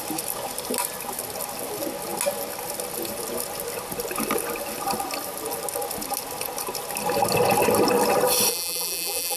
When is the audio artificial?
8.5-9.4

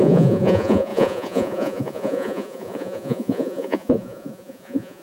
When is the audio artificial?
0.0-5.0

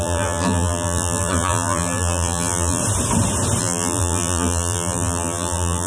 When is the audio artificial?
0.0-2.8; 3.6-5.9

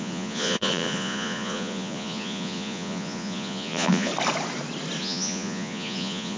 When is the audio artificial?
0.0-4.1; 5.0-6.4

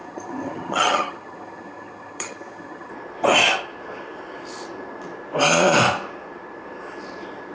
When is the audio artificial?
0.0-2.9

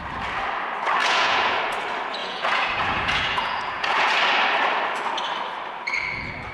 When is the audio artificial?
1.0-1.6; 2.2-4.1

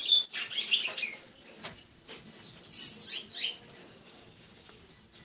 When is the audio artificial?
3.8-4.8